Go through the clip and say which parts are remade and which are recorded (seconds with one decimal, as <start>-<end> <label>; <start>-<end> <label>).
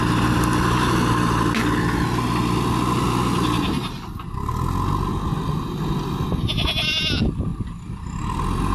0.0-8.7 recorded